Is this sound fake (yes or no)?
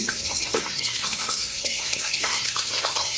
yes